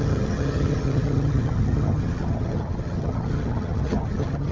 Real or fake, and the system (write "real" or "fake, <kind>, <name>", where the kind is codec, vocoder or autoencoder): fake, vocoder, HiFi-GAN